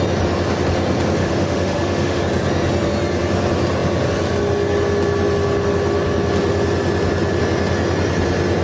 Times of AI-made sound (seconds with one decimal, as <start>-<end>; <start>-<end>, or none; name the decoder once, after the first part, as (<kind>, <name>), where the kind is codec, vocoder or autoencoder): 1.2-2.2 (autoencoder, DAC-VAE)